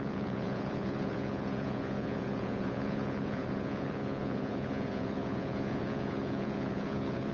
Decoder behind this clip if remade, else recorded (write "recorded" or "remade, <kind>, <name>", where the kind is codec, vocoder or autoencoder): remade, vocoder, Vocos